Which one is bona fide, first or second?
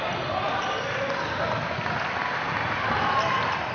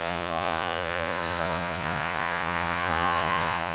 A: first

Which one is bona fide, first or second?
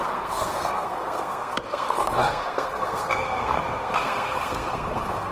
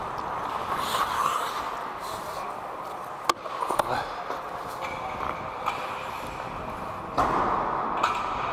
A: second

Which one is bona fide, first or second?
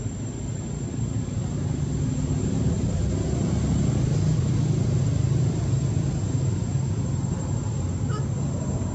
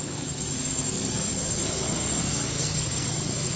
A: first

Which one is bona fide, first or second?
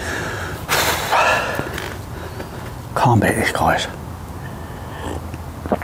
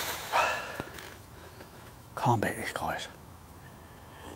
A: first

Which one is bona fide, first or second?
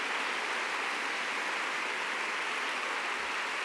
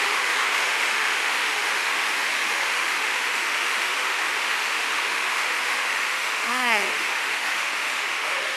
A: first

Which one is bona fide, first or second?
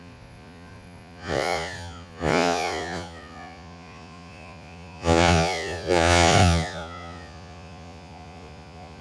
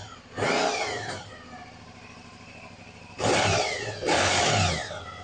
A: second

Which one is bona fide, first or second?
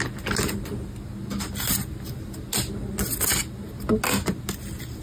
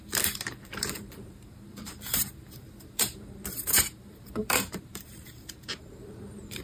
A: first